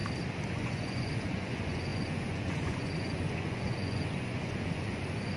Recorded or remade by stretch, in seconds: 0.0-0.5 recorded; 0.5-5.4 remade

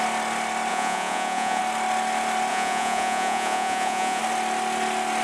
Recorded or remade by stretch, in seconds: 0.0-0.7 recorded; 0.7-1.6 remade; 1.6-2.5 recorded; 2.5-4.2 remade; 4.2-5.2 recorded

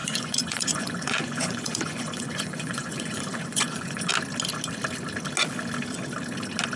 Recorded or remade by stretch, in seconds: 0.0-4.1 remade; 4.1-6.8 recorded